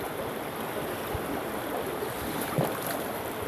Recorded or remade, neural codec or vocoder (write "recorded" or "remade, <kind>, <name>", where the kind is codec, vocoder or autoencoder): remade, vocoder, BigVGAN v2